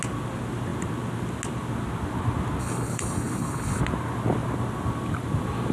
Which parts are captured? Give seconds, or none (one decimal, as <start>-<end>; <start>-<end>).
0.0-2.6; 3.8-5.7